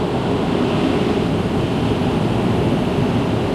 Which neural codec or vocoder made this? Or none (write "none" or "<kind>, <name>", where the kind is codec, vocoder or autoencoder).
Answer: none